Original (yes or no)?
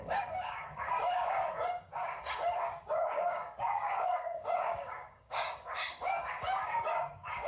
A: no